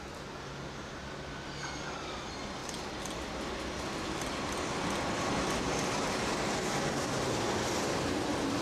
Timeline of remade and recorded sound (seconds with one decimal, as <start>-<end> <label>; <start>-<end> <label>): 0.0-8.6 recorded